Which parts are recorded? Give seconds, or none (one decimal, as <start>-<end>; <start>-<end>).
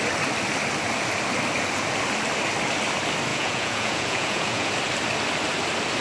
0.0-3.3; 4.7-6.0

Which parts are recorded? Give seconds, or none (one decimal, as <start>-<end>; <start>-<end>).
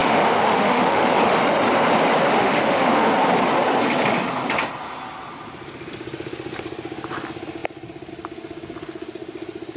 1.4-2.4; 3.1-9.8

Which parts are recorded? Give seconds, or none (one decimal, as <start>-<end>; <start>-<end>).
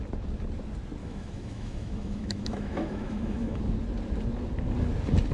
0.0-1.0; 3.6-5.3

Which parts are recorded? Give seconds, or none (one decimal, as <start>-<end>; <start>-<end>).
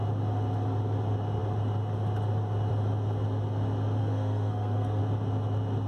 0.0-4.0; 5.0-5.9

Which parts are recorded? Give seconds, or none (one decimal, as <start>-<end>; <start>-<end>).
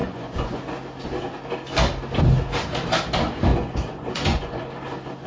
0.6-3.5; 4.6-5.3